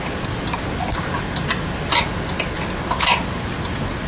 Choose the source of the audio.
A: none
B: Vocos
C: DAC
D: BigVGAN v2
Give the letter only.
A